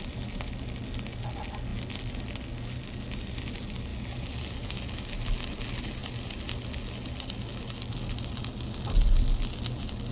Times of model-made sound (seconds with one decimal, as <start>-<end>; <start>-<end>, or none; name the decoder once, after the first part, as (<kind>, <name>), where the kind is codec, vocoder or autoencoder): none